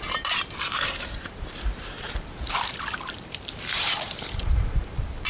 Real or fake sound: fake